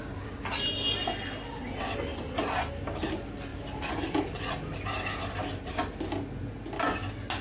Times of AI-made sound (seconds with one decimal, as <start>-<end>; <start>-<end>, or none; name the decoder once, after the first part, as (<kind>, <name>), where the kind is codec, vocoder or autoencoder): none